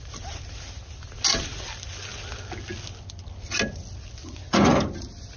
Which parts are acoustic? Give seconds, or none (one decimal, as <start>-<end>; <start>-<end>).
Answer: 0.0-4.2; 4.8-5.4